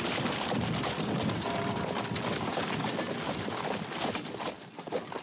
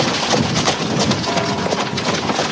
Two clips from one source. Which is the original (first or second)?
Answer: first